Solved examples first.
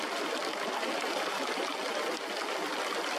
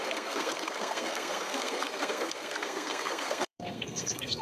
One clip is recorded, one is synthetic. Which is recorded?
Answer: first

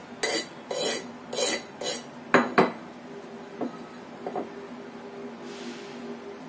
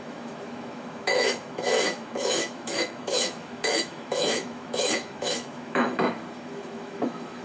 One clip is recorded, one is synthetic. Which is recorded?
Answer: first